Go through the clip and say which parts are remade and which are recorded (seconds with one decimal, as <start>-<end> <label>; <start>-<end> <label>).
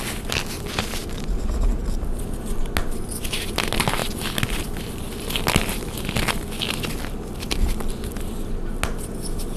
0.0-9.6 recorded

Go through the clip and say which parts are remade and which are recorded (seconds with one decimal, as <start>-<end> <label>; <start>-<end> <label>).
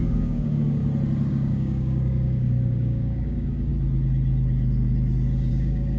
0.0-0.8 remade; 0.8-1.3 recorded; 1.3-3.7 remade; 3.7-5.5 recorded; 5.5-6.0 remade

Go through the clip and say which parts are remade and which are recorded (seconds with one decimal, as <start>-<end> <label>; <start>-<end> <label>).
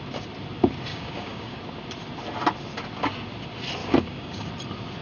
0.0-0.9 recorded; 0.9-1.6 remade; 1.6-3.8 recorded; 3.8-4.5 remade; 4.5-5.0 recorded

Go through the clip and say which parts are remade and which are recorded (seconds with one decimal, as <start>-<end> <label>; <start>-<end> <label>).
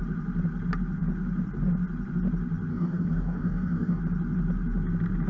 0.0-2.7 recorded; 2.7-4.0 remade; 4.0-5.3 recorded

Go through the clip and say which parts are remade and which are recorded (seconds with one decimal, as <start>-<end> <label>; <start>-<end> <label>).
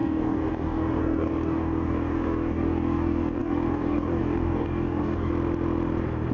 0.0-5.3 remade; 5.3-6.3 recorded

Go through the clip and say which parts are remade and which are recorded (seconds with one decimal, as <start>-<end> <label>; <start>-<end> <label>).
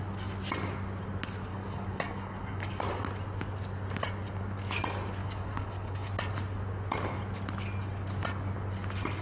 0.0-1.5 recorded; 1.5-2.8 remade; 2.8-5.2 recorded; 5.2-6.1 remade; 6.1-9.2 recorded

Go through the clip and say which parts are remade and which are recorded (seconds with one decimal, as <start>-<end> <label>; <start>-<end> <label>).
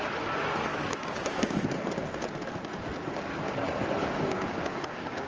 0.0-0.7 recorded; 0.7-1.6 remade; 1.6-4.0 recorded; 4.0-5.3 remade